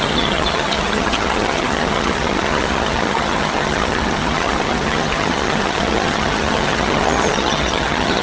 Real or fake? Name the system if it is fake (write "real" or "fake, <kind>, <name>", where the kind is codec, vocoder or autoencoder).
fake, vocoder, HiFi-GAN